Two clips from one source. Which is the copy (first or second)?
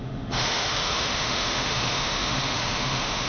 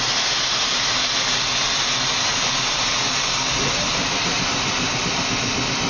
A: first